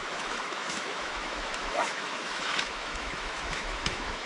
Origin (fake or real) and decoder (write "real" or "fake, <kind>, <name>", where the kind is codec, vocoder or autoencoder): fake, autoencoder, DAC-VAE